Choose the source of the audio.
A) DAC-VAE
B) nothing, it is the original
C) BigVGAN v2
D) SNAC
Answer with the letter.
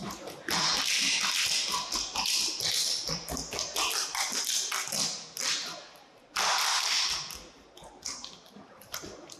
B